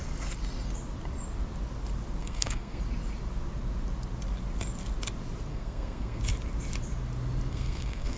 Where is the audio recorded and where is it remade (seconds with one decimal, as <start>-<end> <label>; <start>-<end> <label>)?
0.0-2.2 recorded; 2.2-2.8 remade; 2.8-5.5 recorded; 5.5-6.2 remade; 6.2-7.5 recorded; 7.5-8.2 remade